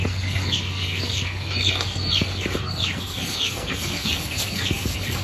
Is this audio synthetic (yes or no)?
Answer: yes